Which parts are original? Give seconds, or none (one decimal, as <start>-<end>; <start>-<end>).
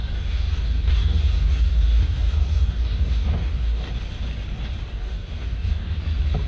3.9-4.9; 6.0-6.5